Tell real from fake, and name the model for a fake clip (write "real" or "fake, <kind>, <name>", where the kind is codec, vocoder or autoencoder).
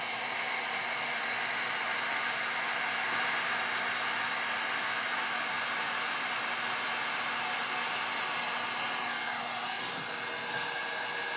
real